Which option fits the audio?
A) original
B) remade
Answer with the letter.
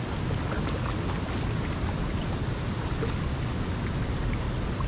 A